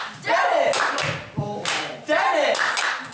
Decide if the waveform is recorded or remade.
recorded